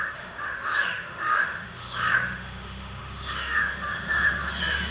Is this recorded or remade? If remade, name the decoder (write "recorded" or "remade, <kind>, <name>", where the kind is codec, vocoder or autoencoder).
remade, autoencoder, DAC-VAE